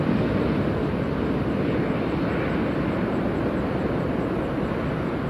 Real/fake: real